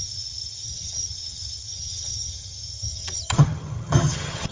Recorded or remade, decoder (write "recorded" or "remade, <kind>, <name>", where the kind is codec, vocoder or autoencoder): remade, vocoder, HiFi-GAN